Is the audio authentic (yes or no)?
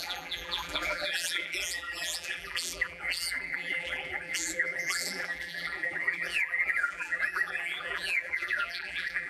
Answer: no